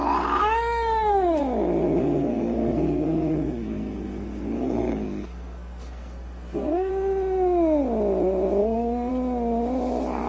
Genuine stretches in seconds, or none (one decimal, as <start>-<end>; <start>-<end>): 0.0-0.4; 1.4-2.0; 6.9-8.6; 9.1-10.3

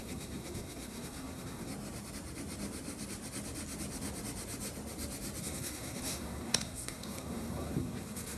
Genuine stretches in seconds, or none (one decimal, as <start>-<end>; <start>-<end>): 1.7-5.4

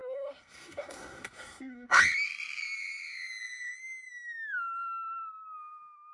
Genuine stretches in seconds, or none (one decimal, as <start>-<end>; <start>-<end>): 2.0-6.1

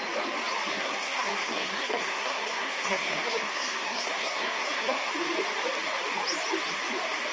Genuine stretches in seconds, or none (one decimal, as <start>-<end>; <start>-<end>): 0.0-0.7; 5.1-7.3

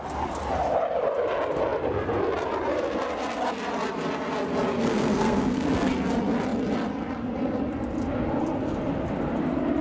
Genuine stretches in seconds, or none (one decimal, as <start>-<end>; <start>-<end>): 0.0-4.8; 5.9-9.8

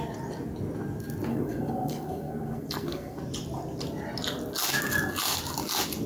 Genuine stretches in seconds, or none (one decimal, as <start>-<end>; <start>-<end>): 0.0-1.3; 3.2-6.1

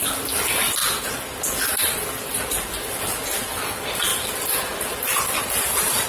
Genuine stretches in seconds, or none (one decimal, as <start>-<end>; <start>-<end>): 0.0-6.1

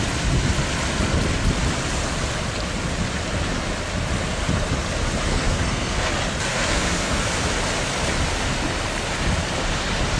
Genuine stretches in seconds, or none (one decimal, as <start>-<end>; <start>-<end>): 0.0-5.3; 6.1-6.5; 7.2-10.2